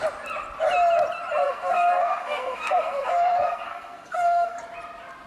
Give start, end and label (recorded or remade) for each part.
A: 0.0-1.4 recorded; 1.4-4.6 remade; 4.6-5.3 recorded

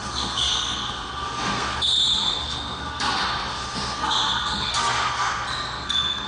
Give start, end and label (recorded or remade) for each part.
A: 0.0-6.3 remade

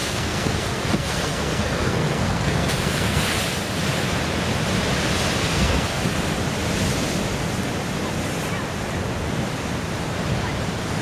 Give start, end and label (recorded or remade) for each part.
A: 0.0-3.2 remade; 3.2-5.4 recorded; 5.4-6.0 remade; 6.0-11.0 recorded

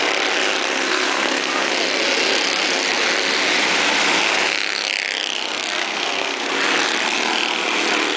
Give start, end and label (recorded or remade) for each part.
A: 0.0-0.9 recorded; 0.9-1.7 remade; 1.7-5.8 recorded; 5.8-6.5 remade; 6.5-8.2 recorded

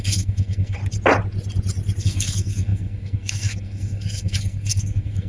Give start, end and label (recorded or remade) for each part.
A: 0.0-0.8 remade; 0.8-2.0 recorded; 2.0-5.3 remade